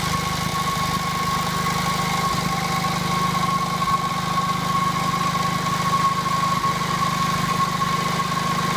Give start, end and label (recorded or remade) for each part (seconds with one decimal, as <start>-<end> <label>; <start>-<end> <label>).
0.0-8.8 recorded